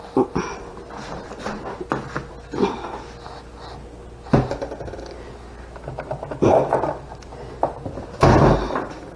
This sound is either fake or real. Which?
real